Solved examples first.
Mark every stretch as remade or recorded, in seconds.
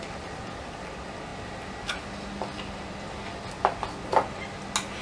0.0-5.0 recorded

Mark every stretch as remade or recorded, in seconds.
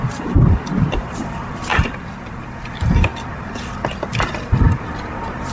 0.0-5.5 remade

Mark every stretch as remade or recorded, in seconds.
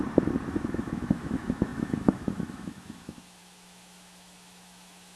0.0-0.5 recorded; 0.5-5.2 remade